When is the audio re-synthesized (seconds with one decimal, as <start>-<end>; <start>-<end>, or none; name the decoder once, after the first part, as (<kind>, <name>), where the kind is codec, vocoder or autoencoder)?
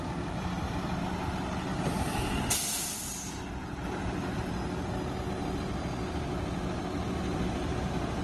1.7-5.0 (vocoder, BigVGAN v2); 7.3-8.2